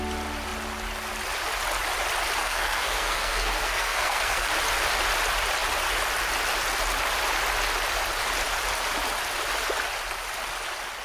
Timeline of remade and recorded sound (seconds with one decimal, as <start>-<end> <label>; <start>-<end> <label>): 0.0-2.4 recorded; 2.4-4.5 remade; 4.5-11.0 recorded